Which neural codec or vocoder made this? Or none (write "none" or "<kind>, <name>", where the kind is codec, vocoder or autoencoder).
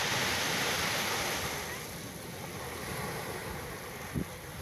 none